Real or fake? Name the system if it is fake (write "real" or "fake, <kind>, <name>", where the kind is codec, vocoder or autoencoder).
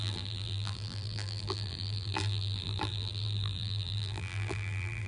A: fake, vocoder, BigVGAN v2